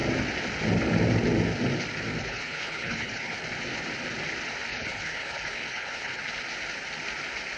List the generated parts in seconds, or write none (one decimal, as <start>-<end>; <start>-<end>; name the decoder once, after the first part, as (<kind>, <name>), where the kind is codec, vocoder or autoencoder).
2.2-3.4 (codec, HILCodec); 4.7-6.2